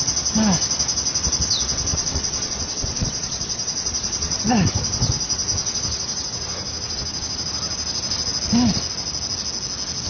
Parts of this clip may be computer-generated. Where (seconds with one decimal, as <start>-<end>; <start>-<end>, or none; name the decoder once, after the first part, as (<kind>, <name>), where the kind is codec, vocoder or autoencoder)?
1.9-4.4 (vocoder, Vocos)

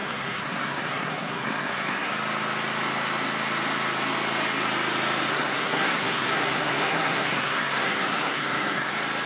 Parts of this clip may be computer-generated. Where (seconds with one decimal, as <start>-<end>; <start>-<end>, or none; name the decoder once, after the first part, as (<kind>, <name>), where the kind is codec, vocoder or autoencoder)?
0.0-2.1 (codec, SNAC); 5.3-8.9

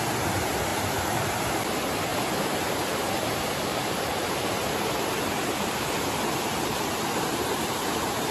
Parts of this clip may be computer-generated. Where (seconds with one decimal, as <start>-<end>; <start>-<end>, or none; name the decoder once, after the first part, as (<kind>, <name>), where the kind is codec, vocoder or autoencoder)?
0.7-1.5 (vocoder, BigVGAN v2); 2.1-6.0; 7.3-8.3

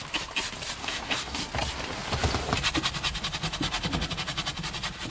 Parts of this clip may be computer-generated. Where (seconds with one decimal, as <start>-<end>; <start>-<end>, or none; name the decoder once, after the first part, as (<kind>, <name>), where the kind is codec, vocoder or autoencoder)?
0.8-1.4 (codec, DAC)

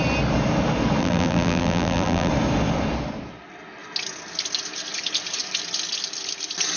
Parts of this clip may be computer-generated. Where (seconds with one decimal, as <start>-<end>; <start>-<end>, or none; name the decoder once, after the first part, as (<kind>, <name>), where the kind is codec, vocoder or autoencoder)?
1.0-2.3 (vocoder, BigVGAN v2)

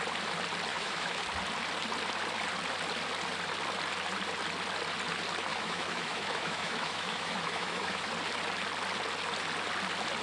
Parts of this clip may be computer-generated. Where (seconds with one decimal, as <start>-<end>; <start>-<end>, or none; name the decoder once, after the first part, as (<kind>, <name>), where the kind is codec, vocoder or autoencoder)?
0.7-1.2 (autoencoder, DAC-VAE); 5.5-8.1

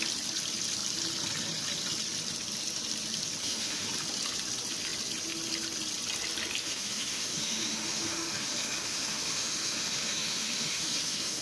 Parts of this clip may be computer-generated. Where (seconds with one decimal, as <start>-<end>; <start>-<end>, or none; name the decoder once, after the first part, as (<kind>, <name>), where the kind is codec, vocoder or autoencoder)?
3.4-3.9 (autoencoder, DAC-VAE); 6.6-11.4

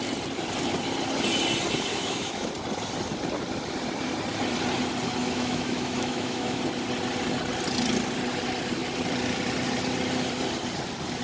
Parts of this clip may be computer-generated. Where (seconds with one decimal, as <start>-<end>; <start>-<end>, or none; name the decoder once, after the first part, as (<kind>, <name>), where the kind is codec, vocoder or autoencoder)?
1.9-2.5 (autoencoder, DAC-VAE); 5.2-6.6